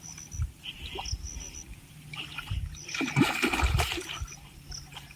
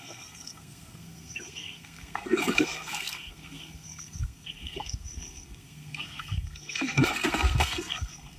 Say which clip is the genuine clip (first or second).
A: first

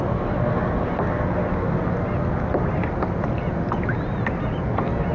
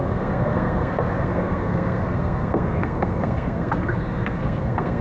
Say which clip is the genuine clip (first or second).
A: first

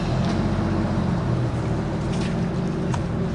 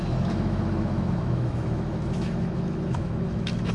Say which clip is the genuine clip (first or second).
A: first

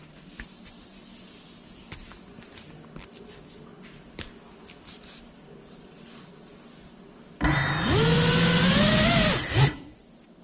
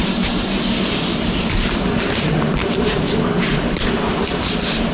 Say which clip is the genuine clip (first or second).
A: first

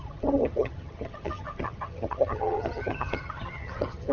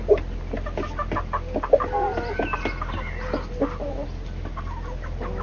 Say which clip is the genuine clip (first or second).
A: second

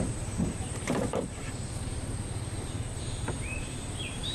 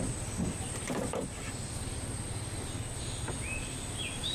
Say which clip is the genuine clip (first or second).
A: second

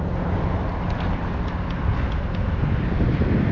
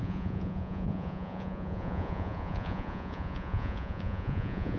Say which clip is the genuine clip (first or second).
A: first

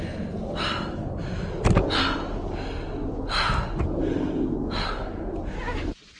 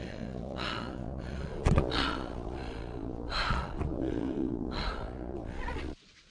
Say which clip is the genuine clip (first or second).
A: first